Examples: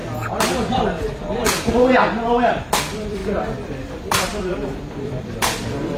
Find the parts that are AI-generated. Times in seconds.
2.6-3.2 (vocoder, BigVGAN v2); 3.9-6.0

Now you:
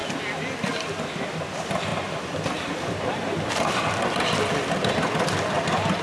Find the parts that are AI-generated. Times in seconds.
0.0-6.0 (vocoder, BigVGAN v2)

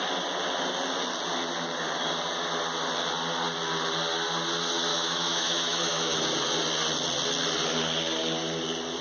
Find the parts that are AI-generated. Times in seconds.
4.9-6.2 (autoencoder, DAC-VAE)

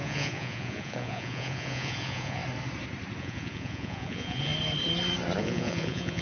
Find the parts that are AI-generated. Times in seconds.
0.0-2.4 (vocoder, Vocos); 3.2-4.5; 5.4-6.2

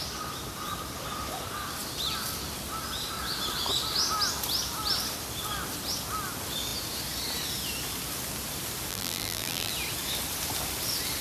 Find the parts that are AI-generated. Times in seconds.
8.9-9.7 (vocoder, BigVGAN v2)